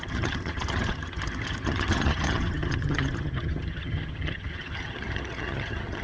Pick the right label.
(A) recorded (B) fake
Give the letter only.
B